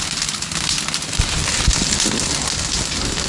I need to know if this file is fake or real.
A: real